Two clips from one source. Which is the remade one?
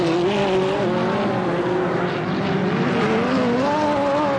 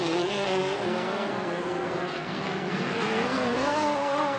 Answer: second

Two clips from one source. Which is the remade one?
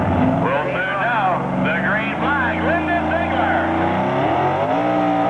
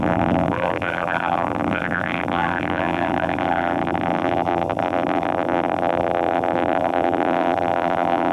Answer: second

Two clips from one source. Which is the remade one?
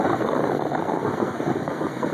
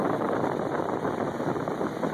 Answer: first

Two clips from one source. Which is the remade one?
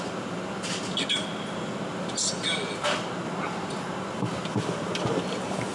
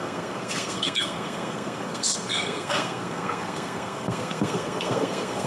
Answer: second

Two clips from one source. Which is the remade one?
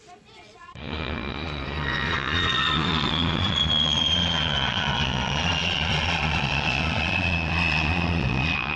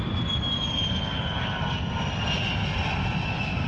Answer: first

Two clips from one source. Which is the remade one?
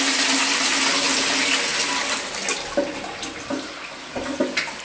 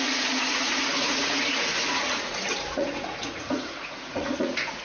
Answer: second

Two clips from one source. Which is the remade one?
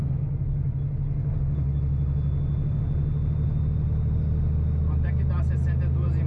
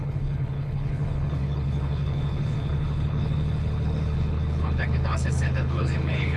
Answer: second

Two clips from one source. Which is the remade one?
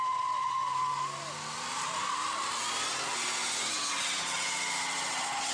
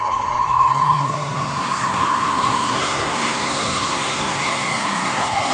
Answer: second